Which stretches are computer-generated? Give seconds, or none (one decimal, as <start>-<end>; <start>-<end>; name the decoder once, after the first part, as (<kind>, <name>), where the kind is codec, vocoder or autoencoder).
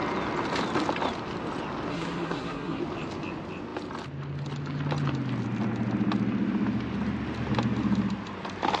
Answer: 1.9-2.8 (codec, SNAC)